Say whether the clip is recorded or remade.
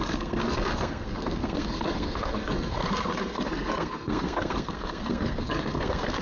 remade